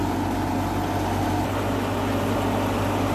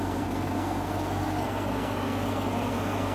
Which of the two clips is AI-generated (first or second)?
second